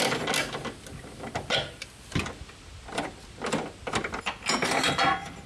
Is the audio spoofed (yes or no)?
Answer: no